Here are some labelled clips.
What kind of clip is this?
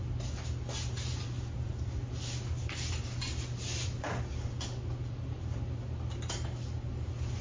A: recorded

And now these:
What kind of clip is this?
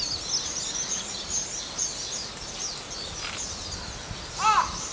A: recorded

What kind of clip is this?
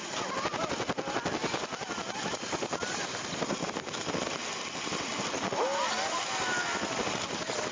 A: recorded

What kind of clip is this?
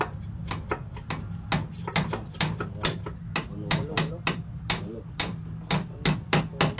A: recorded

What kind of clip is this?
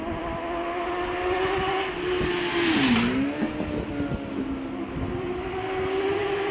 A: recorded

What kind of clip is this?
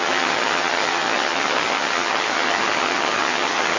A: remade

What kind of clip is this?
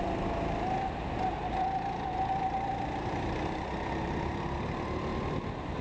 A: recorded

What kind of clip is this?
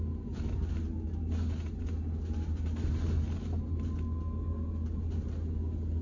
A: recorded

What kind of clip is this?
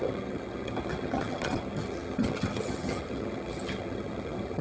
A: remade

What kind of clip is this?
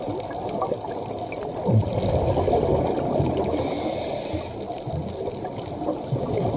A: recorded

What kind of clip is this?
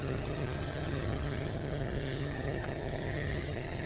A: remade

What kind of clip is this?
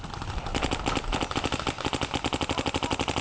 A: recorded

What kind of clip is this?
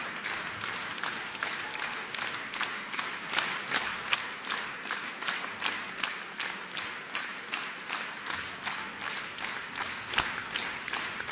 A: recorded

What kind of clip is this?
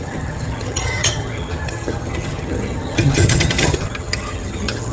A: remade